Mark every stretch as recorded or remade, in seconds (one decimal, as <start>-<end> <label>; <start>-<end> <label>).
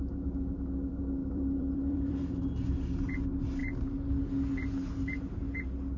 0.0-1.2 recorded; 1.2-2.4 remade; 2.4-6.0 recorded